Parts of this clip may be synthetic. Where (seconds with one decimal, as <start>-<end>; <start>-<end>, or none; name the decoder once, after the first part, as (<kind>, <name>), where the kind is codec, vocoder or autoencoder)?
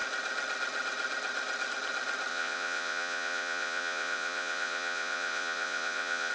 2.3-6.3 (vocoder, Vocos)